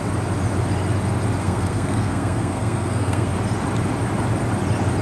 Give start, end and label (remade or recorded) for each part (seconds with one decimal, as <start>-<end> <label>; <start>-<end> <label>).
0.0-1.4 recorded; 1.4-3.3 remade; 3.3-5.0 recorded